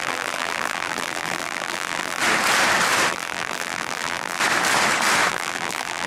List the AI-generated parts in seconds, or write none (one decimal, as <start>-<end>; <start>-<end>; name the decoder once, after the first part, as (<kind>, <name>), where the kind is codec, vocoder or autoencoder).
0.0-2.2 (vocoder, BigVGAN v2); 3.1-4.4; 5.3-6.1